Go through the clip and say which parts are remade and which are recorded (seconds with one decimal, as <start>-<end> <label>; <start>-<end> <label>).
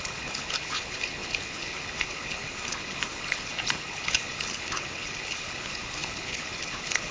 0.0-7.1 remade